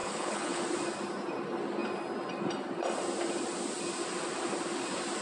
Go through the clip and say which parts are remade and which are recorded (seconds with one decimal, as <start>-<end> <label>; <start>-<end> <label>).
0.0-0.6 remade; 0.6-5.2 recorded